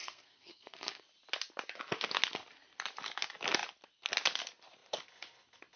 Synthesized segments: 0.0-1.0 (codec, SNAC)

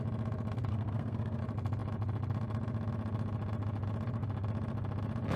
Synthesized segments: 0.7-1.4 (codec, SNAC)

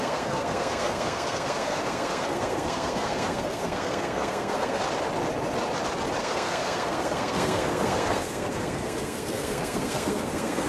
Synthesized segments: 0.0-4.8 (codec, SNAC); 6.2-10.7